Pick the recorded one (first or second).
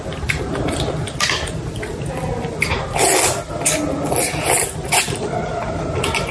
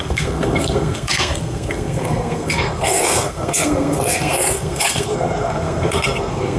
first